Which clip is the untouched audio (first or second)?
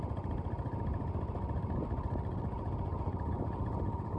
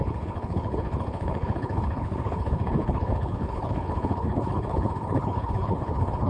first